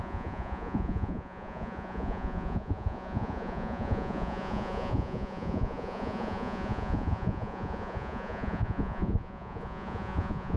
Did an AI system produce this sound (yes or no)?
yes